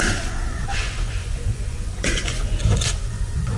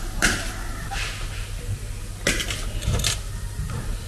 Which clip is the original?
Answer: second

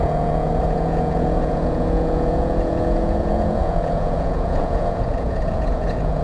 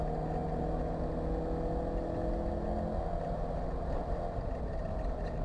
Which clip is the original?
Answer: second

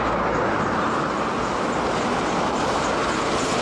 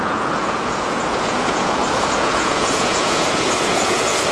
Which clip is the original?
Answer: first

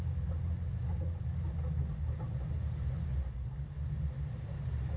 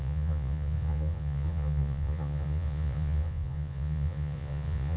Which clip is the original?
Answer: first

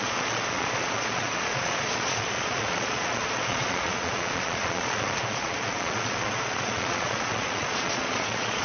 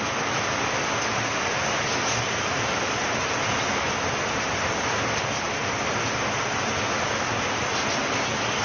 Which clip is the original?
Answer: second